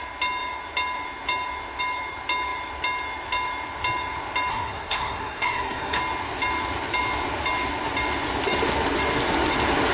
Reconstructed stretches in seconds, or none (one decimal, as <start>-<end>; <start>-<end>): 4.5-6.0